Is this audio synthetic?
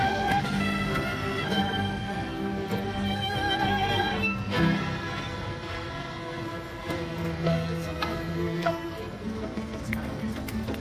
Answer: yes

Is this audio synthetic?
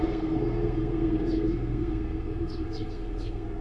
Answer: yes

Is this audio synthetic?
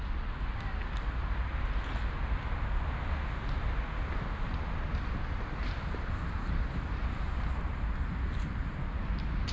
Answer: no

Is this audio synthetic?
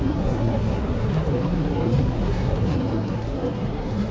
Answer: yes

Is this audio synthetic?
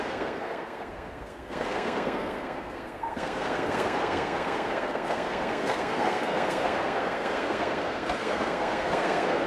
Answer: yes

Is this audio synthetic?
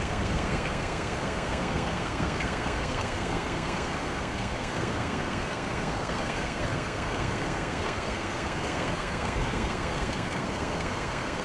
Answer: yes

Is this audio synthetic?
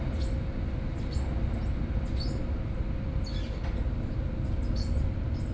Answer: no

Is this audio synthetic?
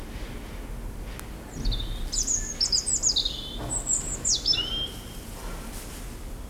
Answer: no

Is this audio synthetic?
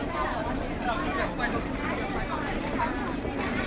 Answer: no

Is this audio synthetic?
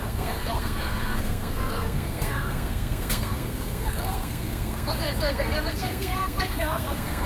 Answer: yes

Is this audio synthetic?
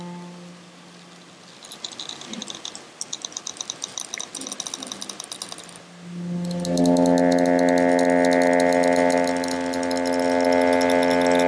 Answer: no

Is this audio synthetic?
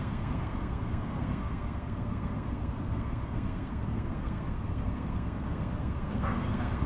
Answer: yes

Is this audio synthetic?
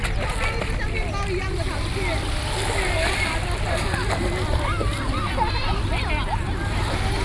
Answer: no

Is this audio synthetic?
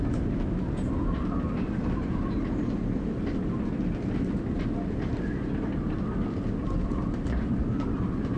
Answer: no